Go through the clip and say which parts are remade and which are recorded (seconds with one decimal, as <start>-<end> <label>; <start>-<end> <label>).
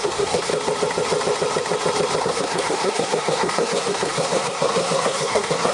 0.0-0.5 remade; 0.5-2.2 recorded; 2.2-5.7 remade